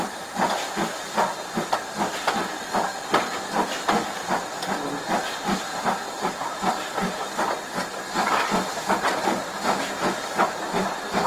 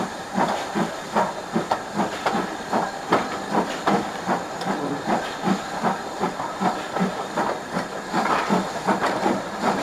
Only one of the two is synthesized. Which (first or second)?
second